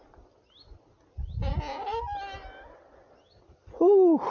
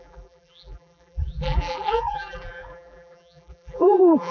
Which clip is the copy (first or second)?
second